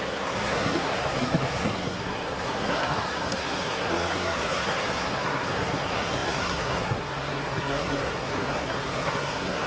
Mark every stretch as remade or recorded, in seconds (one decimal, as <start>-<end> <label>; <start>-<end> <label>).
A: 0.0-9.7 remade